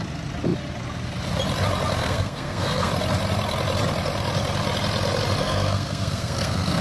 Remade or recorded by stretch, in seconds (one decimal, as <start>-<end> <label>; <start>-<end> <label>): 0.0-2.0 recorded; 2.0-2.9 remade; 2.9-5.4 recorded; 5.4-6.8 remade